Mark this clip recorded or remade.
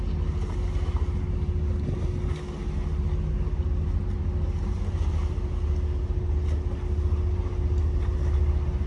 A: recorded